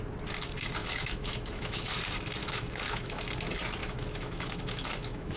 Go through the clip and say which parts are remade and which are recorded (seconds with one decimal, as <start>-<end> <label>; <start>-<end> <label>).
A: 0.0-0.8 recorded; 0.8-2.0 remade; 2.0-2.4 recorded; 2.4-3.3 remade; 3.3-3.8 recorded; 3.8-5.4 remade